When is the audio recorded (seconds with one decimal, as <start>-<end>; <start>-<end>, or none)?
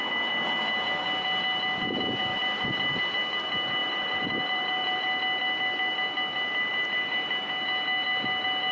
0.0-2.3; 3.0-3.8; 5.0-8.7